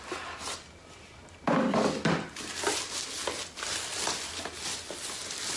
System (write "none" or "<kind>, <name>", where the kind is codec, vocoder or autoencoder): none